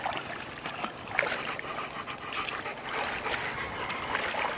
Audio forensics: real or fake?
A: real